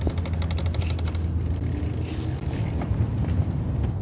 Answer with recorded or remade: recorded